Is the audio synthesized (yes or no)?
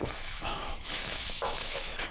yes